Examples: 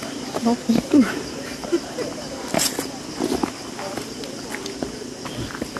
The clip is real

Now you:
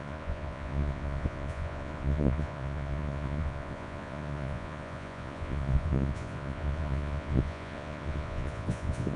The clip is fake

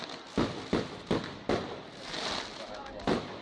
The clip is real